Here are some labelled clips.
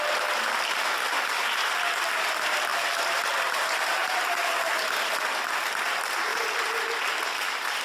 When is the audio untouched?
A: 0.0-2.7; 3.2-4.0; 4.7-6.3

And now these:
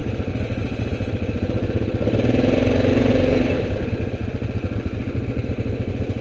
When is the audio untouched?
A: 1.8-3.1; 3.9-6.2

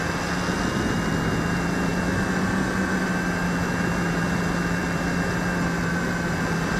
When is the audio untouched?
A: 0.0-6.8

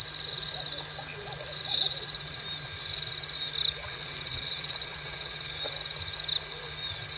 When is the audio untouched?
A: 0.0-1.7; 2.4-3.8; 5.4-7.2

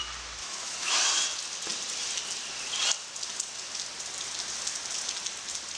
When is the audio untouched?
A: 0.0-0.4; 1.0-5.8

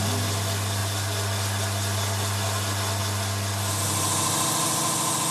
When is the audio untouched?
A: 0.0-5.3

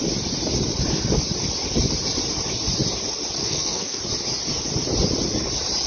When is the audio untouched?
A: 0.0-3.4; 4.0-5.9